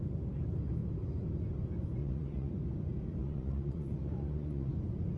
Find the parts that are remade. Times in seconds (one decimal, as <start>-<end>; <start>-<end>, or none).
2.0-2.6; 3.2-4.7